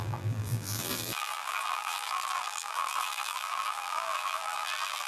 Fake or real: fake